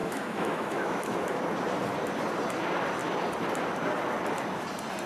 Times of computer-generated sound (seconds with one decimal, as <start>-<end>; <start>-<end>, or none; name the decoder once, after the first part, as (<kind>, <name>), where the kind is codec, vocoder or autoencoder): 0.0-1.4 (autoencoder, DAC-VAE)